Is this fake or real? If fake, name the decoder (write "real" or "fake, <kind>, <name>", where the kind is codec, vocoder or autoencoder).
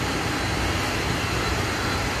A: real